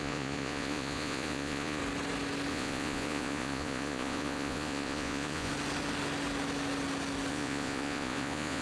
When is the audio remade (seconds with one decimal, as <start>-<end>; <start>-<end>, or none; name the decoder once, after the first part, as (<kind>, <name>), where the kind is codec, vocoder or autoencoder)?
0.0-1.8 (vocoder, Vocos); 2.5-5.5; 7.3-8.6